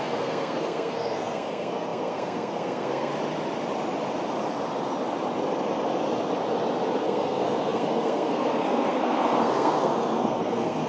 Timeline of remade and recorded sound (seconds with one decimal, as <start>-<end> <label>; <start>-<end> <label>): 0.0-3.1 remade; 3.1-7.0 recorded; 7.0-10.9 remade